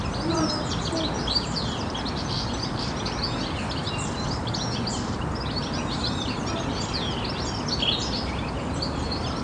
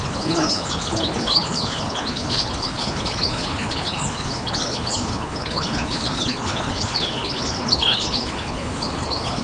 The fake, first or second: second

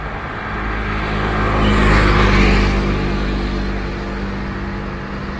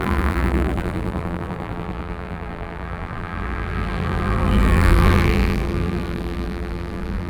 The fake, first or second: second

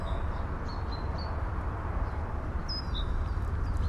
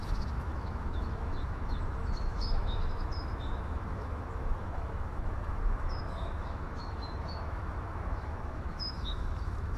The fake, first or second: second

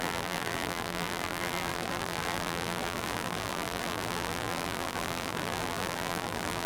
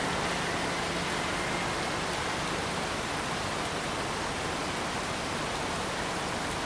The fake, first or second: first